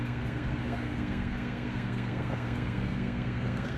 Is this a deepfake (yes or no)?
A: yes